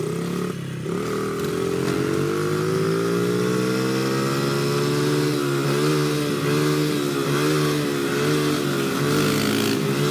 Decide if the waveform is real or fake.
real